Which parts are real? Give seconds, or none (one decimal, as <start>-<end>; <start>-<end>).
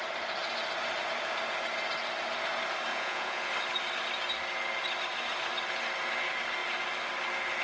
0.0-2.9; 3.5-7.6